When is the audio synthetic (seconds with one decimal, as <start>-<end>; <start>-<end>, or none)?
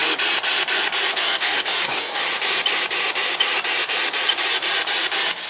1.1-2.2